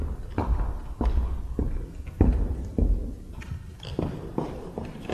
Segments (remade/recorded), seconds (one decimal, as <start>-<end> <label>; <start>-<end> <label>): 0.0-5.1 recorded